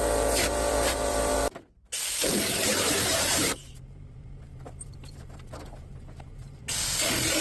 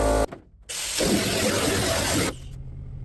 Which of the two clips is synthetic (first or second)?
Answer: first